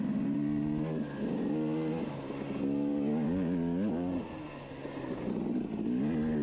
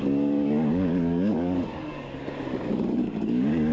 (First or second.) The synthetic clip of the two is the second